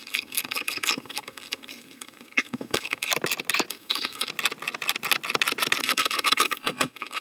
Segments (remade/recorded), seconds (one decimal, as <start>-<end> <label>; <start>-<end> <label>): 0.0-3.1 remade; 3.1-3.7 recorded; 3.7-4.3 remade; 4.3-5.8 recorded; 5.8-7.2 remade